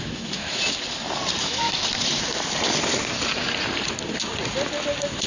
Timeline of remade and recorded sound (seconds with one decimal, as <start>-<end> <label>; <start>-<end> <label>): 0.0-0.6 remade; 0.6-1.4 recorded; 1.4-1.8 remade; 1.8-5.3 recorded